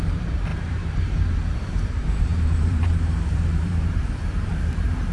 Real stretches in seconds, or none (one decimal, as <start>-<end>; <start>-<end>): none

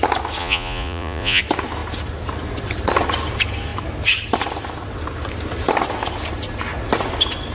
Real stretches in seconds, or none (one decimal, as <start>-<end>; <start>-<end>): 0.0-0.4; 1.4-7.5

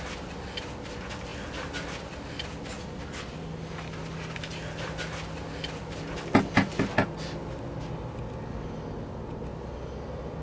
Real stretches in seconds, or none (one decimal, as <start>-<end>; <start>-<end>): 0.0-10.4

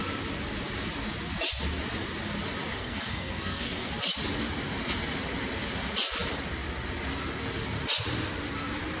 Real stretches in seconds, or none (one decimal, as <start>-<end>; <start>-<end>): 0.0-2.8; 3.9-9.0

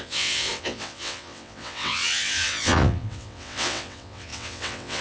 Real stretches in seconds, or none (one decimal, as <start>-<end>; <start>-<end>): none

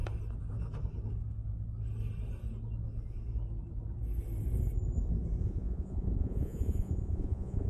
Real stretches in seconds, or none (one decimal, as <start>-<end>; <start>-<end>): 0.0-5.4